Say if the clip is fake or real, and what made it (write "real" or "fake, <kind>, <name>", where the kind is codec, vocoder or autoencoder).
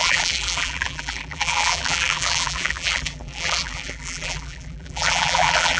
fake, vocoder, BigVGAN v2